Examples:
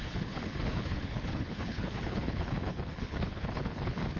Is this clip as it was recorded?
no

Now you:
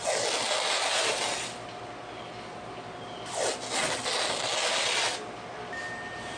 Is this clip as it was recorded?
yes